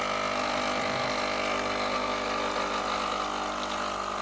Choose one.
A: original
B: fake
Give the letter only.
A